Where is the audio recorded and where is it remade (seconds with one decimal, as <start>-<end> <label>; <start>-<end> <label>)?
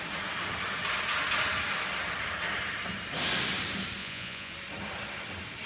0.0-4.0 recorded; 4.0-4.5 remade; 4.5-5.7 recorded